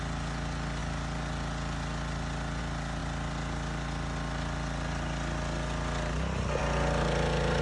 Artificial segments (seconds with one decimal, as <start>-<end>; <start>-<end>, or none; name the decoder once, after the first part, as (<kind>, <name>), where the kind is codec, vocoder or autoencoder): none